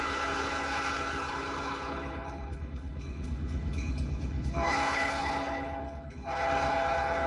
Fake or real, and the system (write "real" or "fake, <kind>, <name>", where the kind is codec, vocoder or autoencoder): fake, codec, HILCodec